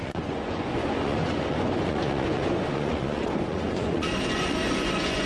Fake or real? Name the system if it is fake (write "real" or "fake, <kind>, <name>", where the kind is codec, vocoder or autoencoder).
fake, vocoder, Vocos